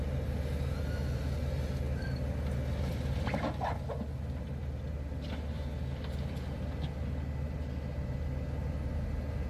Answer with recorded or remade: recorded